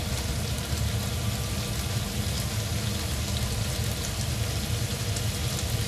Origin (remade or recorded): recorded